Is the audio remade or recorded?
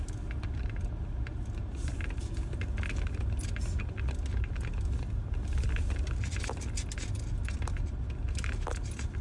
recorded